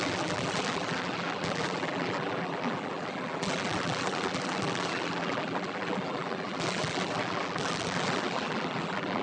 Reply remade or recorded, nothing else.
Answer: remade